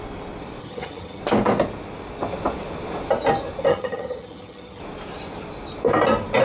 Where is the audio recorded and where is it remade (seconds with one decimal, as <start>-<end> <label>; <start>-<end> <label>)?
0.0-0.6 recorded; 0.6-1.2 remade; 1.2-3.7 recorded; 3.7-4.8 remade; 4.8-6.4 recorded